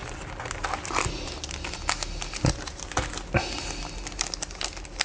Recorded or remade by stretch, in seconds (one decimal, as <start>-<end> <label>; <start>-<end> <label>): 0.0-5.0 recorded